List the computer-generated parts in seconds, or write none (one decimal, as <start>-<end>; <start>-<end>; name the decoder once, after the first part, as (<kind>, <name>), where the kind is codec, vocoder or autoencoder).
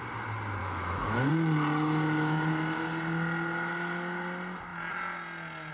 0.6-1.3 (autoencoder, DAC-VAE)